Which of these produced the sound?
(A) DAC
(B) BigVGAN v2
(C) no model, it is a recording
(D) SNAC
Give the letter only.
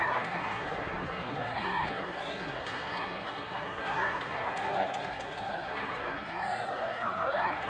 D